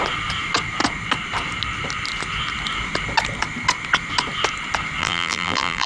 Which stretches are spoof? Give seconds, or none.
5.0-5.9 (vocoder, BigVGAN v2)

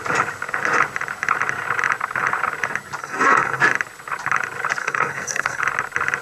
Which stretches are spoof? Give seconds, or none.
3.0-3.6 (codec, SNAC); 4.8-5.6

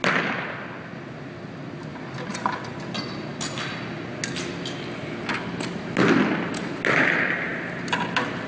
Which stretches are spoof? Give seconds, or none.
none

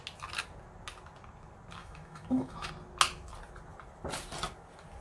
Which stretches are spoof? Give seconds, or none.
1.8-2.7 (autoencoder, DAC-VAE)